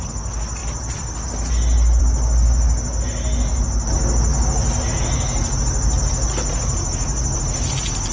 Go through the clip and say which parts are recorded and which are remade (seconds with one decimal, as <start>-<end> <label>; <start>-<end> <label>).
0.0-8.1 recorded

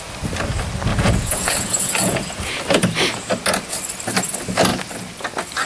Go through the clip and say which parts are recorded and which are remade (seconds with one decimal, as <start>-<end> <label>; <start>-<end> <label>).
0.0-0.9 recorded; 0.9-2.6 remade; 2.6-5.7 recorded

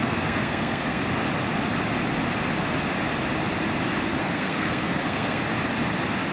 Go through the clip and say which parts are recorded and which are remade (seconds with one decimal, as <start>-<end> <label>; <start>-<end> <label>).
0.0-1.0 remade; 1.0-4.2 recorded; 4.2-5.4 remade; 5.4-6.3 recorded

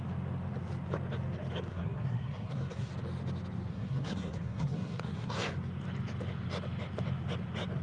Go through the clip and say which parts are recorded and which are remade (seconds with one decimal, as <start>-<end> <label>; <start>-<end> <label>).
0.0-1.7 recorded; 1.7-2.9 remade; 2.9-3.7 recorded; 3.7-5.5 remade; 5.5-7.8 recorded

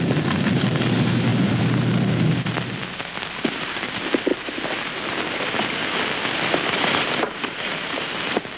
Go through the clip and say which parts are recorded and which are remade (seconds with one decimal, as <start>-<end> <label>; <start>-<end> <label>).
0.0-4.3 remade; 4.3-6.5 recorded; 6.5-8.6 remade

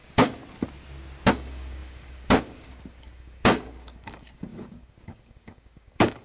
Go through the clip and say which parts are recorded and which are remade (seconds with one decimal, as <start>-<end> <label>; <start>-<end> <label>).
0.0-0.4 remade; 0.4-1.3 recorded; 1.3-6.2 remade

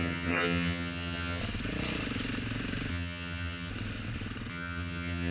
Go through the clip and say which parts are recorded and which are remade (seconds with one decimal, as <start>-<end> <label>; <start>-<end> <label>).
0.0-1.4 remade; 1.4-2.9 recorded; 2.9-3.7 remade; 3.7-4.5 recorded; 4.5-5.3 remade